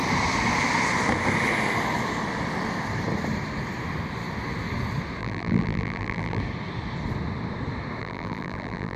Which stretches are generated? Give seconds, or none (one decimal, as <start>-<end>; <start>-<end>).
5.2-6.4; 8.0-9.0